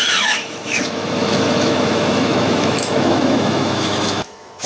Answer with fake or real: fake